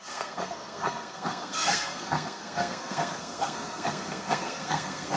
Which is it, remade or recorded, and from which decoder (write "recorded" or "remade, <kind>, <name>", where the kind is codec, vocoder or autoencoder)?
remade, codec, SNAC